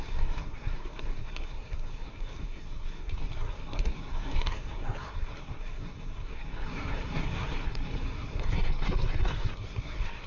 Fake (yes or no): yes